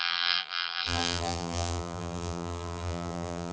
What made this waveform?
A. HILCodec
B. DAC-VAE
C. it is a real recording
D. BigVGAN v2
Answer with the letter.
D